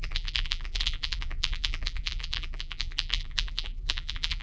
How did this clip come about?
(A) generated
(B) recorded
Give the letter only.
A